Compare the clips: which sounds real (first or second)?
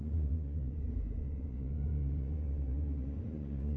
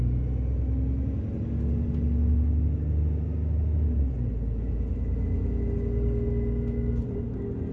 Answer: second